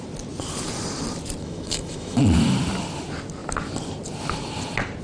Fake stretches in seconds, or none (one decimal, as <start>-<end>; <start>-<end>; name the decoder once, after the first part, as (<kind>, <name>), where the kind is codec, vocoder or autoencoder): 1.4-2.2 (autoencoder, DAC-VAE)